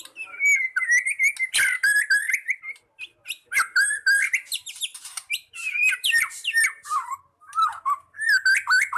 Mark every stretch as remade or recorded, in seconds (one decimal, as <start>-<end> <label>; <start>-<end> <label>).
0.0-4.9 recorded; 4.9-7.4 remade; 7.4-9.0 recorded